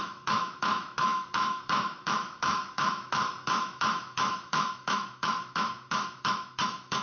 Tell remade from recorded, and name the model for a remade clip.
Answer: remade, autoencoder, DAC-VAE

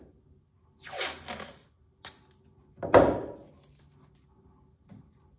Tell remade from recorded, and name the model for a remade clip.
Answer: recorded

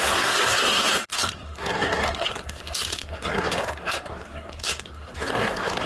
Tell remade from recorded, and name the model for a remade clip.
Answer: remade, codec, SNAC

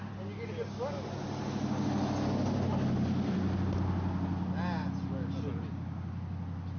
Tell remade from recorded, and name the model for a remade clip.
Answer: recorded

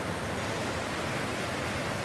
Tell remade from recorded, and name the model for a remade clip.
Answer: recorded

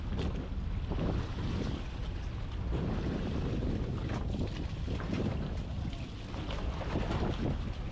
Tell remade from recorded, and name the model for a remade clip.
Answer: recorded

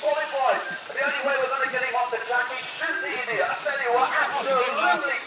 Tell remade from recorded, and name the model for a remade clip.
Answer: recorded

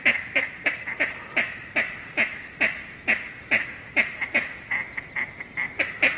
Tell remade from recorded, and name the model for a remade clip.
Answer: recorded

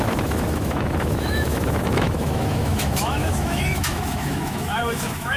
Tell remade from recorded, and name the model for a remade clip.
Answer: remade, autoencoder, DAC-VAE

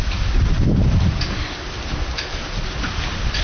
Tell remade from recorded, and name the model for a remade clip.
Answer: recorded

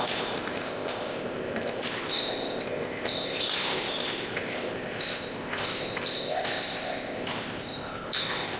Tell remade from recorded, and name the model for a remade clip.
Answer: remade, codec, ZipCodec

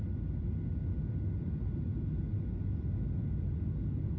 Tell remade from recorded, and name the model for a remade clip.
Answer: recorded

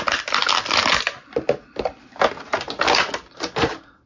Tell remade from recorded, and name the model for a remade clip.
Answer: recorded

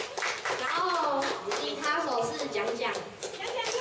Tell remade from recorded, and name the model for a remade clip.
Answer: recorded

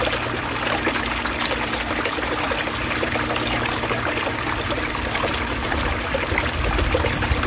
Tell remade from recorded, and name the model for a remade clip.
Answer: recorded